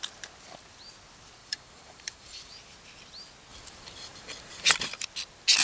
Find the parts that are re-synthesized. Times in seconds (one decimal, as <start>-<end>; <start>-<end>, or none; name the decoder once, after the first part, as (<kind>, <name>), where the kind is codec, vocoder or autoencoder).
1.4-2.5 (vocoder, BigVGAN v2); 3.5-4.7